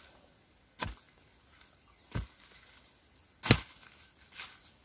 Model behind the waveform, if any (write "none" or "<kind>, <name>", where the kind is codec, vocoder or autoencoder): none